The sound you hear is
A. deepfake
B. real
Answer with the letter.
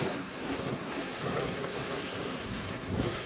A